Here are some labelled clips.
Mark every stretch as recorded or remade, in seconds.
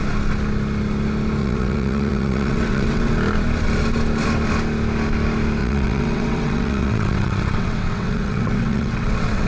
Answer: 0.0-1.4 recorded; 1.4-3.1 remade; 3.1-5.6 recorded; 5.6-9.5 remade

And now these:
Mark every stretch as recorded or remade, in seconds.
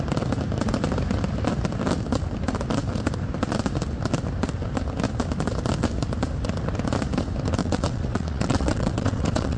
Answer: 0.0-7.6 recorded; 7.6-9.6 remade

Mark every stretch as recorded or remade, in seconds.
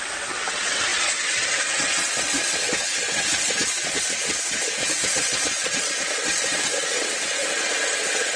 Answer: 0.0-7.4 remade; 7.4-8.0 recorded; 8.0-8.4 remade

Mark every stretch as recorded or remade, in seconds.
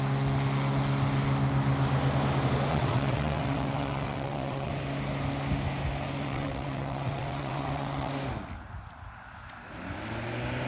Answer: 0.0-2.7 recorded; 2.7-4.7 remade; 4.7-6.2 recorded; 6.2-8.1 remade; 8.1-10.7 recorded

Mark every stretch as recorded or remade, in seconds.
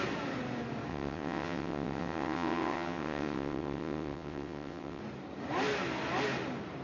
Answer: 0.0-0.9 recorded; 0.9-5.0 remade; 5.0-6.8 recorded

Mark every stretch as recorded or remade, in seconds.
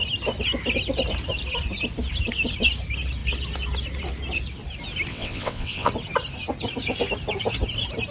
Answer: 0.0-5.1 recorded; 5.1-5.9 remade; 5.9-8.1 recorded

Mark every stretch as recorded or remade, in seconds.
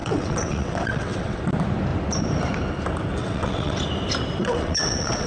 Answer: 0.0-1.4 remade; 1.4-3.2 recorded; 3.2-3.8 remade; 3.8-4.4 recorded; 4.4-5.3 remade